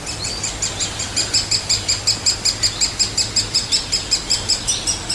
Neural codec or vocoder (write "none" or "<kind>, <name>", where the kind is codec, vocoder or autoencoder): none